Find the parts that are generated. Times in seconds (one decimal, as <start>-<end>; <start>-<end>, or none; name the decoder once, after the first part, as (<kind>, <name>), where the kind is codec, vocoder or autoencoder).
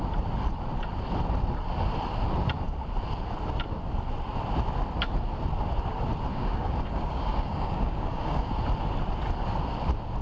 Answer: 6.3-8.5 (codec, DAC)